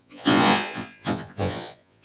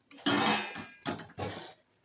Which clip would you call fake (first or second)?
first